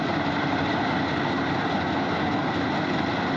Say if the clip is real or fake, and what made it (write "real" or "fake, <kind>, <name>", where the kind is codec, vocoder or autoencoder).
real